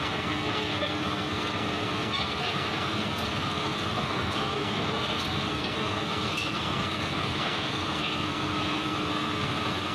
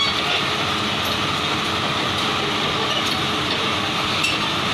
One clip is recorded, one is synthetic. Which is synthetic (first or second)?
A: first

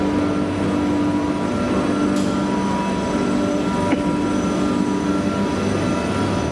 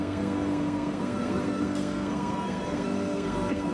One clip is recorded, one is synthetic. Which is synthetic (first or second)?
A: second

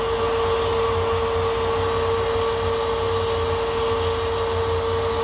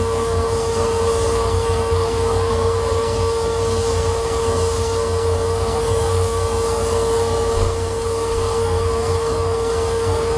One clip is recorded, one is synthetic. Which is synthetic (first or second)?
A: second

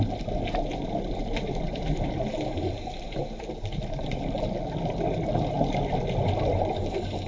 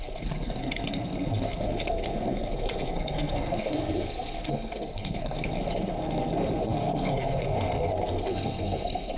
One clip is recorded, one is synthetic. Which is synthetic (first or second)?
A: second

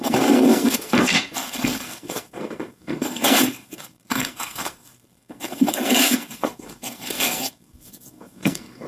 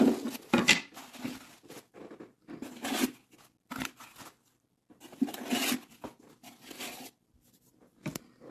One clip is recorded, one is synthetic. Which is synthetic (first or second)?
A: first